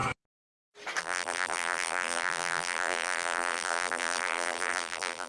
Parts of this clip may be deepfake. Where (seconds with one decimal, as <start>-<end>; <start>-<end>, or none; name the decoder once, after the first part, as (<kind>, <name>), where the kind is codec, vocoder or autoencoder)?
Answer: 1.0-5.3 (vocoder, BigVGAN v2)